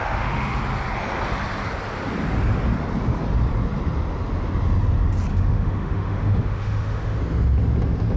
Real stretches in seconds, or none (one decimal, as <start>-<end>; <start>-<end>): 0.6-5.3; 7.2-8.2